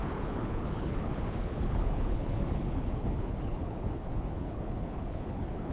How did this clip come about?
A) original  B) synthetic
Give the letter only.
B